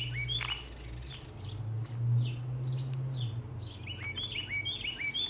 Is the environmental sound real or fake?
real